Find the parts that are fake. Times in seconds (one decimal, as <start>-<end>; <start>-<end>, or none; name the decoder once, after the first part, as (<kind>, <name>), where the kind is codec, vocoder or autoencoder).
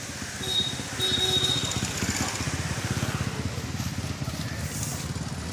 none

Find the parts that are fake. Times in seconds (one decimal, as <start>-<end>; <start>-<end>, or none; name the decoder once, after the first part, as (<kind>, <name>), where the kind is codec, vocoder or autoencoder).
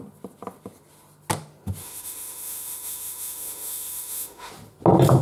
1.8-4.5 (autoencoder, DAC-VAE)